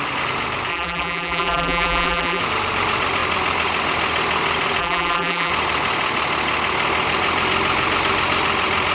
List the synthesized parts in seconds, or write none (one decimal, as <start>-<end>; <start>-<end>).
0.7-2.4; 4.8-5.5